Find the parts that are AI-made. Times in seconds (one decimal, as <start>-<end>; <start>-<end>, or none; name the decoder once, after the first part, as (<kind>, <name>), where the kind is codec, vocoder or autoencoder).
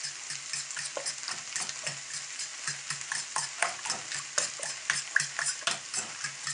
none